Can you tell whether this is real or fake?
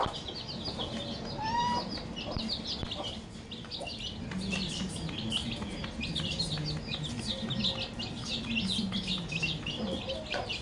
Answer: real